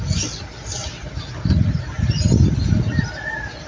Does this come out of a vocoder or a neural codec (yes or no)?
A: no